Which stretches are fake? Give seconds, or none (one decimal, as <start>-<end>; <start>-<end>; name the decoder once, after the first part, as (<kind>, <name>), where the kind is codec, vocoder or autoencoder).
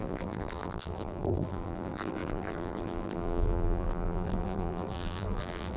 0.0-5.8 (vocoder, BigVGAN v2)